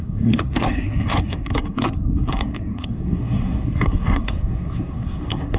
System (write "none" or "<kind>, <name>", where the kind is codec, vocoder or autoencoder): codec, SNAC